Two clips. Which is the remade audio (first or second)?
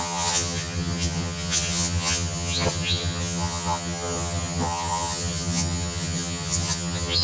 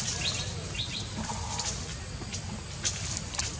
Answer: first